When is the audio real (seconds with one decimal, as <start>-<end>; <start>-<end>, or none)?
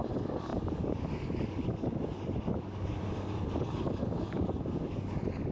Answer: none